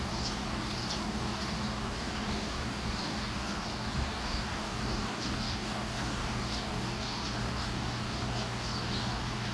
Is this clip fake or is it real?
fake